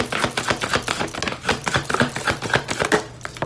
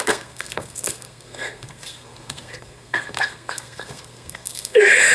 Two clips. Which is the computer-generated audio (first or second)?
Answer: second